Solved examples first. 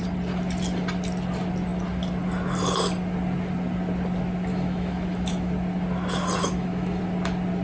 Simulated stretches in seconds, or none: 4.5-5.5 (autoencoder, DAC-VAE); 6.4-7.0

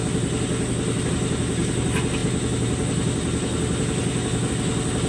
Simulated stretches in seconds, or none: none

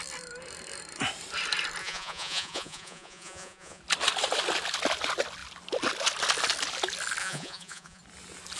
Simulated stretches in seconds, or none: 1.8-3.8 (vocoder, Vocos); 7.2-8.0

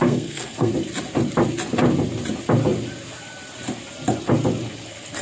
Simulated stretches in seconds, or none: 0.0-0.7 (codec, SNAC)